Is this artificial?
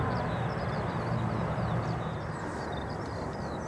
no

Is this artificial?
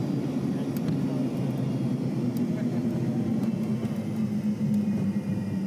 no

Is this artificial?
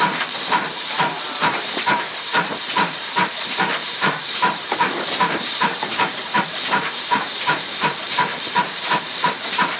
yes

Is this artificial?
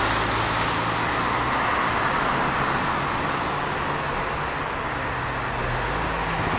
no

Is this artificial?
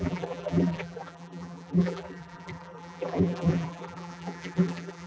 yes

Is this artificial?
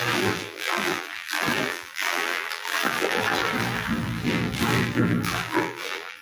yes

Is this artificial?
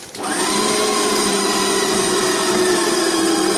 yes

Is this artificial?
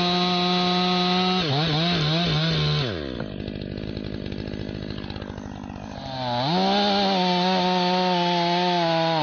no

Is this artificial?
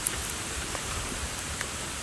yes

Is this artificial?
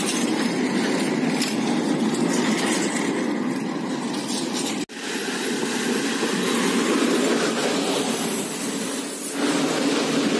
no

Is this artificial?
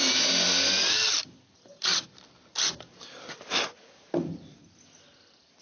yes